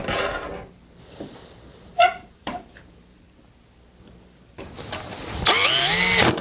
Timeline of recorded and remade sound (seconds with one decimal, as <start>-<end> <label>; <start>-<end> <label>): 0.0-1.7 recorded; 1.7-3.2 remade; 3.2-6.4 recorded